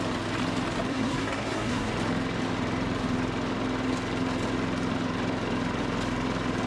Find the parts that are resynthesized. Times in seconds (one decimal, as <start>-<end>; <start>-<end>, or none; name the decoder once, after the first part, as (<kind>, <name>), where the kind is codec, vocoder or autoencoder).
0.9-1.9 (codec, SNAC)